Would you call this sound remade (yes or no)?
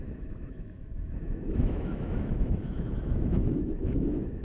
yes